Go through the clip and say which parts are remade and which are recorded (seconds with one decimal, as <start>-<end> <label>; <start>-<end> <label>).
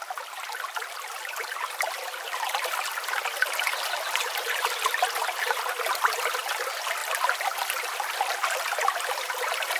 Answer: 0.0-9.8 recorded